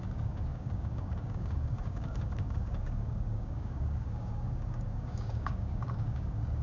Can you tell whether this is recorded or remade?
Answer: remade